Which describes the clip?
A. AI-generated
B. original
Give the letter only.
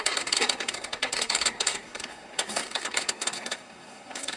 A